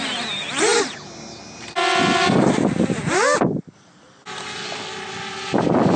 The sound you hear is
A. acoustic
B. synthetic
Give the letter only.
A